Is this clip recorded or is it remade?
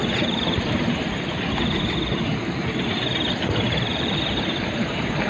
remade